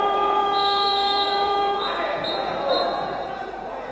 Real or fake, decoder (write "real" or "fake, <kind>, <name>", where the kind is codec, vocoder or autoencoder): fake, vocoder, Vocos